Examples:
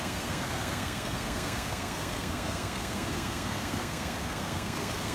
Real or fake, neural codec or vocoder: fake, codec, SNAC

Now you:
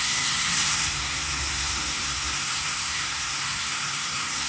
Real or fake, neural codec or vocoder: fake, codec, SNAC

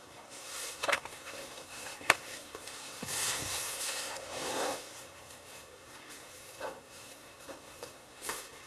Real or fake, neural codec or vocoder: fake, codec, SNAC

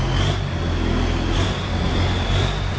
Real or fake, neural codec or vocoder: real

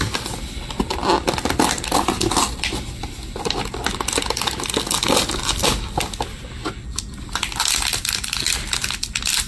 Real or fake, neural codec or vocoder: real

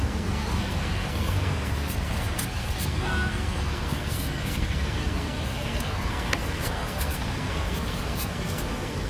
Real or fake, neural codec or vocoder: fake, codec, SNAC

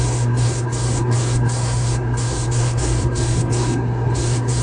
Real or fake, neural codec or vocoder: fake, codec, SNAC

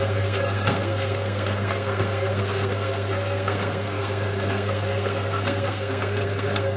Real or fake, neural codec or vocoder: fake, codec, SNAC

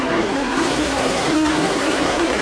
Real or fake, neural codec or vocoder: fake, codec, SNAC